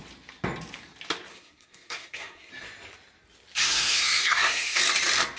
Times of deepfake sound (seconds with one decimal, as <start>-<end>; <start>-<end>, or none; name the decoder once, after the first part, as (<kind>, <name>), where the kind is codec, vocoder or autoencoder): 1.3-2.5 (codec, SNAC); 3.6-4.8